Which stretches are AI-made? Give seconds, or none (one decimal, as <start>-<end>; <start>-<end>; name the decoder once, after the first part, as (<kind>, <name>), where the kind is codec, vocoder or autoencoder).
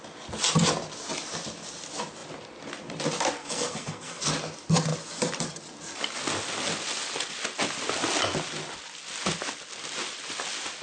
3.4-4.3 (codec, SNAC)